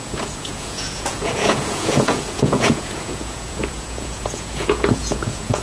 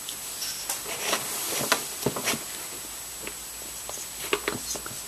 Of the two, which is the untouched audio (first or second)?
second